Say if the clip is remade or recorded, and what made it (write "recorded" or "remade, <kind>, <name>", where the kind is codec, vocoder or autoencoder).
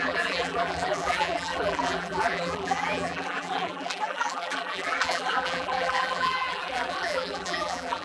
remade, vocoder, BigVGAN v2